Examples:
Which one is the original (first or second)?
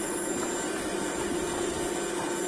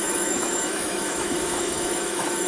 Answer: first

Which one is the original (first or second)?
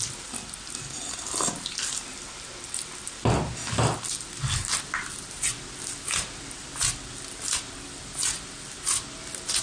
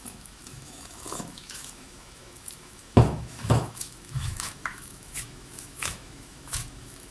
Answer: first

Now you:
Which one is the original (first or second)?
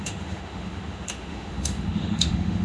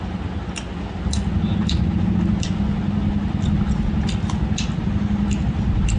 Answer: second